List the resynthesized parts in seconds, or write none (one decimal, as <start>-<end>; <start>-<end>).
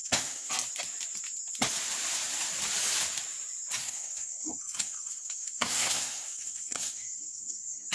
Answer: 0.0-0.5; 3.8-7.9